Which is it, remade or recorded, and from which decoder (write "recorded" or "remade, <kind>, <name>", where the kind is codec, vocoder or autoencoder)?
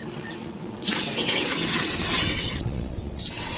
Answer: remade, vocoder, WaveNeXt